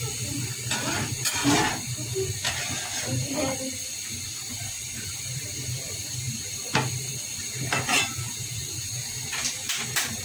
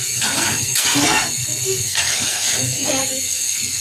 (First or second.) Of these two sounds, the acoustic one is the first